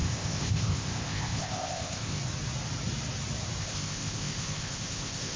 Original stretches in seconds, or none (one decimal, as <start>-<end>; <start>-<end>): 2.2-3.6